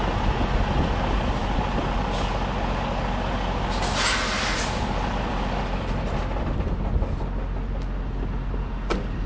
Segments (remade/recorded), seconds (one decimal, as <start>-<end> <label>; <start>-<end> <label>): 0.0-9.3 recorded